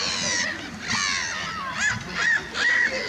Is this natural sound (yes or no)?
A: yes